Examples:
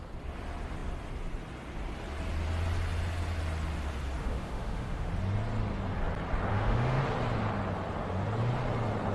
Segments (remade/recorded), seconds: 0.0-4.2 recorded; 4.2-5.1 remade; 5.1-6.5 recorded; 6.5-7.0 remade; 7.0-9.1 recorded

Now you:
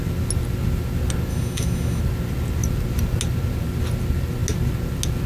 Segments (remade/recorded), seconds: 0.0-1.3 recorded; 1.3-2.0 remade; 2.0-5.3 recorded

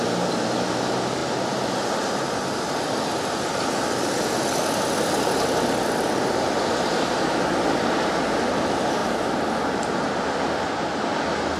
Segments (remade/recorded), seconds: 0.0-11.6 recorded

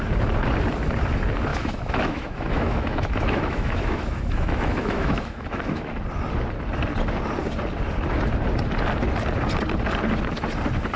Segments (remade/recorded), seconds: 0.0-1.5 recorded; 1.5-5.9 remade; 5.9-11.0 recorded

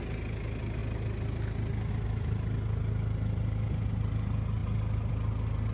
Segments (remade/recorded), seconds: 0.0-5.7 recorded

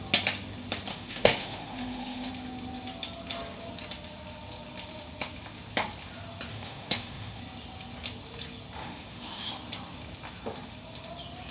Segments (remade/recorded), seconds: 0.0-0.9 recorded; 0.9-2.3 remade; 2.3-6.5 recorded; 6.5-7.4 remade; 7.4-8.8 recorded; 8.8-9.5 remade; 9.5-11.5 recorded

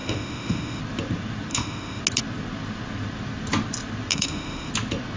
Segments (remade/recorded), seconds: 0.0-0.8 remade; 0.8-1.5 recorded; 1.5-2.0 remade; 2.0-4.1 recorded; 4.1-4.7 remade; 4.7-5.2 recorded